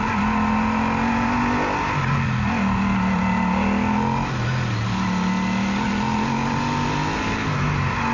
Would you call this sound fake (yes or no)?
no